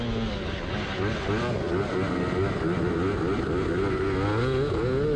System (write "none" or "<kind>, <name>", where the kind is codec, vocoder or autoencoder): none